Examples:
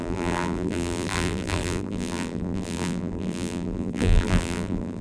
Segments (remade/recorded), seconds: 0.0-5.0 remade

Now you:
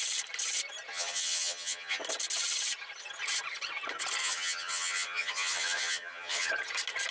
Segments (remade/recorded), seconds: 0.0-0.9 recorded; 0.9-2.0 remade; 2.0-4.2 recorded; 4.2-6.5 remade; 6.5-7.1 recorded

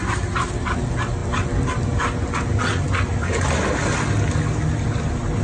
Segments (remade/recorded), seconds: 0.0-5.4 recorded

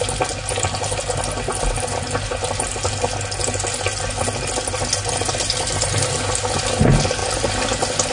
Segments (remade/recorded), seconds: 0.0-8.1 recorded

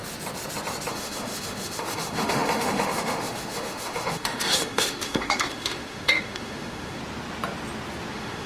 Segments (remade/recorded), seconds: 0.0-0.9 recorded; 0.9-7.0 remade; 7.0-8.1 recorded; 8.1-8.5 remade